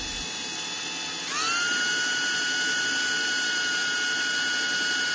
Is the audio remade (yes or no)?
no